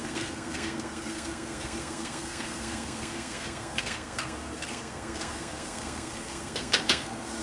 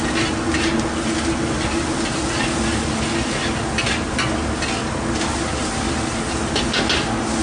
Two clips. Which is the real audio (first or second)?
second